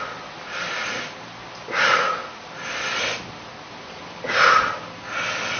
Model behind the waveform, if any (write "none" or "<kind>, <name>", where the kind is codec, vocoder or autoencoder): none